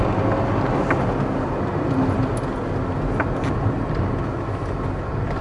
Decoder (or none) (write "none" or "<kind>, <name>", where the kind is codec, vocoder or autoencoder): none